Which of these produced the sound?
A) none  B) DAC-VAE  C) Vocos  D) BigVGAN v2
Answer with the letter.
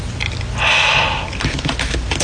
A